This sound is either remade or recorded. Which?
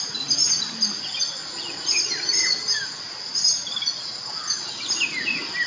recorded